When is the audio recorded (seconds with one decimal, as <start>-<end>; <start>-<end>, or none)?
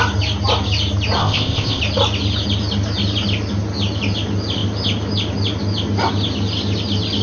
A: 0.0-1.2; 1.8-7.2